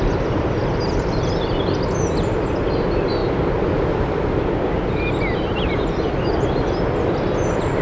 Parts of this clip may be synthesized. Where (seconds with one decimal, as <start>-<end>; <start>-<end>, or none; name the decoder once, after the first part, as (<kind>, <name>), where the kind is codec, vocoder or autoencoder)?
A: none